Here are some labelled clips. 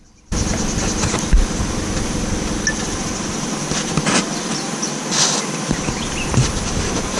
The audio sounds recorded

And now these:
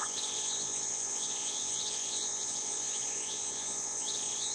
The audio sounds remade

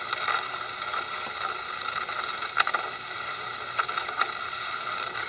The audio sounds recorded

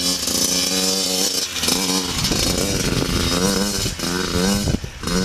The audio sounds recorded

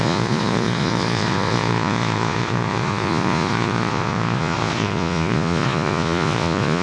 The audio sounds remade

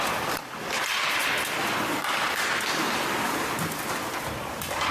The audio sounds recorded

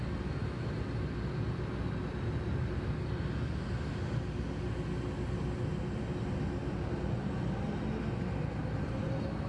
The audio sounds recorded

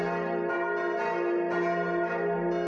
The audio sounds recorded